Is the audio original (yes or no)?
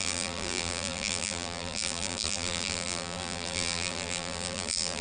no